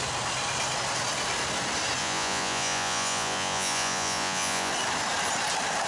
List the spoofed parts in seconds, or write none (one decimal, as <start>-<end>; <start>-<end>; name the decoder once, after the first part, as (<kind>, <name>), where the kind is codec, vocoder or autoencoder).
2.0-4.7 (vocoder, Vocos)